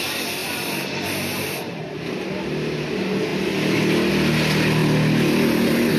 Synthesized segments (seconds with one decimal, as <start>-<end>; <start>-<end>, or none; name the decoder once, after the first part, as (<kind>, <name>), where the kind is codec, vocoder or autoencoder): 0.4-1.8 (vocoder, BigVGAN v2)